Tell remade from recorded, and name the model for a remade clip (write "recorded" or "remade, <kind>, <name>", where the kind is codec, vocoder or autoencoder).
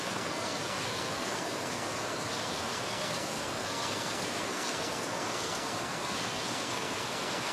remade, codec, SNAC